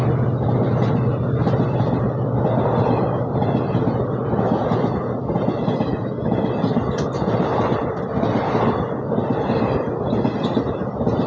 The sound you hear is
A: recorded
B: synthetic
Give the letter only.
A